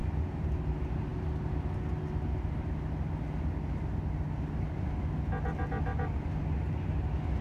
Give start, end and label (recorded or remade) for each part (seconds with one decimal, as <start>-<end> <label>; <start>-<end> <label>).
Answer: 0.0-7.4 recorded